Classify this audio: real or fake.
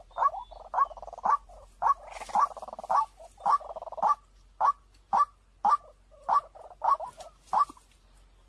real